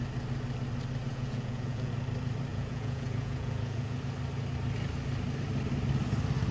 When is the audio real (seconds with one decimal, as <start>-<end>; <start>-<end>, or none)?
0.0-1.1; 1.9-2.5; 4.0-6.5